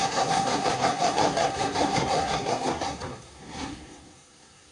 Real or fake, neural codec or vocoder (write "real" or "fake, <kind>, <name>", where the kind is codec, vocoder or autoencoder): fake, codec, SNAC